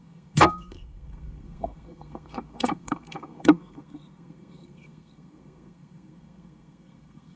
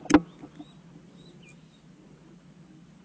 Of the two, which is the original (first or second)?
second